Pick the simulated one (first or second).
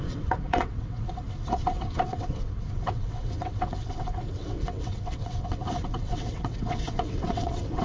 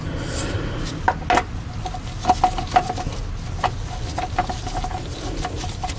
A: first